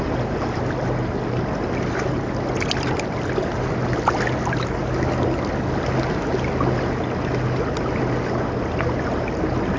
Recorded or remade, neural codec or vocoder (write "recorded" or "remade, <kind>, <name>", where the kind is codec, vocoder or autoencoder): recorded